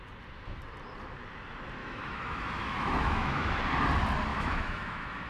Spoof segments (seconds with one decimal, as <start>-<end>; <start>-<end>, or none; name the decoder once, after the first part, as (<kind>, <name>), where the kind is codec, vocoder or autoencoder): 1.8-3.6 (autoencoder, DAC-VAE); 4.3-5.3